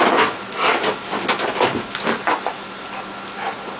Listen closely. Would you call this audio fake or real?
real